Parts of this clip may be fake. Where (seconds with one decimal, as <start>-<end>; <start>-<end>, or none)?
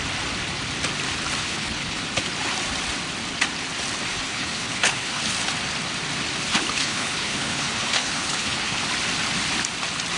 1.4-2.0; 4.1-5.2; 6.5-8.8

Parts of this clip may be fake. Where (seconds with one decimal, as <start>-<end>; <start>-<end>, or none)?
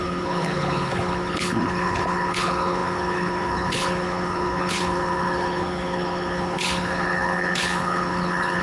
0.0-8.6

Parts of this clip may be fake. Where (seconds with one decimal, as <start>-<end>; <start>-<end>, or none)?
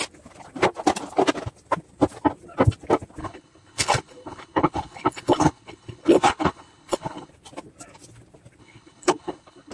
3.2-7.3; 8.6-9.7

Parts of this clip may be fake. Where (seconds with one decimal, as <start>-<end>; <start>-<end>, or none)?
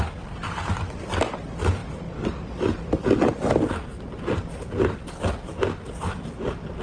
none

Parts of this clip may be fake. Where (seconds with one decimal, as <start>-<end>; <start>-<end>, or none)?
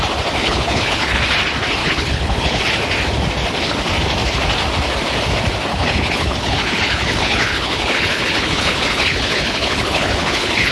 0.4-1.2; 1.8-2.6; 5.7-10.7